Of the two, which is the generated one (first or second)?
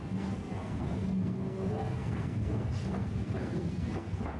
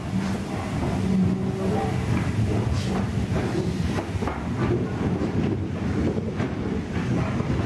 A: first